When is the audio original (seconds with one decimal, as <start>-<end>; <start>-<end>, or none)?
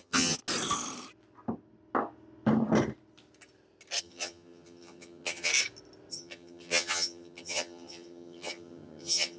0.4-4.0; 5.5-6.1